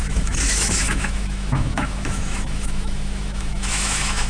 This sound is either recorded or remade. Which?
remade